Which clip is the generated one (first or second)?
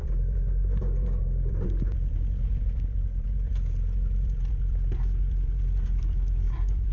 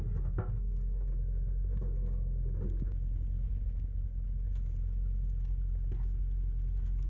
first